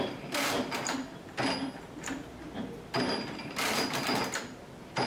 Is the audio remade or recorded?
recorded